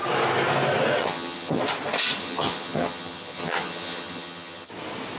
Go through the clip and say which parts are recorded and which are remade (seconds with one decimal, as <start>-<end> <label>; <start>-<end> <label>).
0.0-1.0 recorded; 1.0-1.6 remade; 1.6-2.2 recorded; 2.2-4.7 remade; 4.7-5.2 recorded